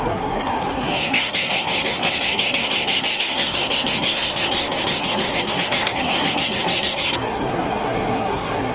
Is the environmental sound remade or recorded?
remade